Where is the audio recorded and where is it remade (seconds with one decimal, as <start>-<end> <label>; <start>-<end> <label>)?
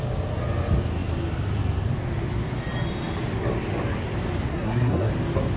0.0-4.5 recorded; 4.5-5.1 remade; 5.1-5.6 recorded